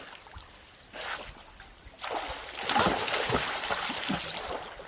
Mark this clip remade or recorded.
recorded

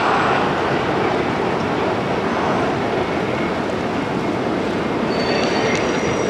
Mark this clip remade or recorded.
recorded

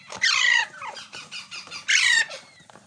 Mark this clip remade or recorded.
remade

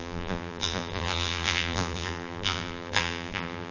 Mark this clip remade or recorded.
remade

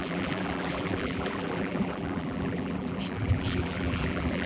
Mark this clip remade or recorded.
remade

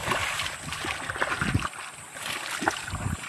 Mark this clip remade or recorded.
recorded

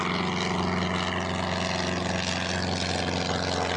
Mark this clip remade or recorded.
recorded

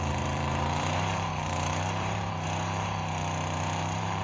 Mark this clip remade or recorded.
remade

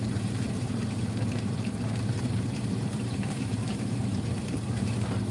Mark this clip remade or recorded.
remade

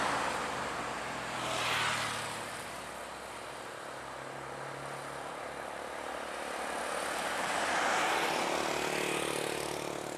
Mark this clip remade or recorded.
recorded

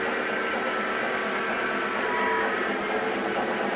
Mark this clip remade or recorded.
recorded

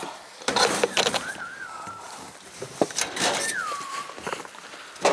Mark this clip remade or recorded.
remade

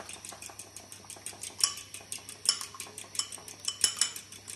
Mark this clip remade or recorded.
recorded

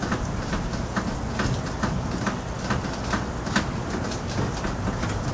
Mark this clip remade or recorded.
recorded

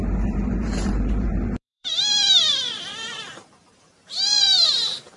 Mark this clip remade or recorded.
remade